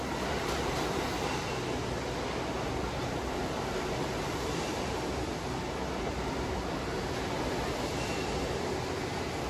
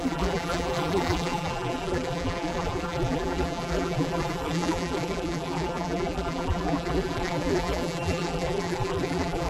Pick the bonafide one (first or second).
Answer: first